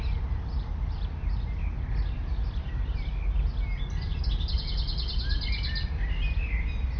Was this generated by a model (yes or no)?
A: no